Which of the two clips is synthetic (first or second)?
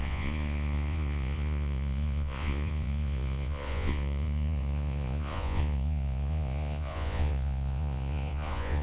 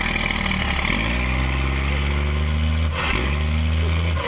first